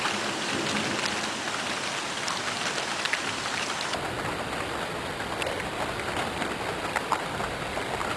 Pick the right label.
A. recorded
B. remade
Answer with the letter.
A